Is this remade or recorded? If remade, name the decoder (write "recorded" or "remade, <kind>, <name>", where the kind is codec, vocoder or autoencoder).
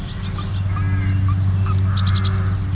recorded